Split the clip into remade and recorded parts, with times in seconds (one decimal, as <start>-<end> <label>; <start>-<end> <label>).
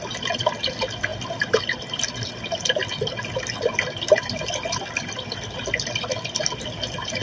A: 0.0-7.2 recorded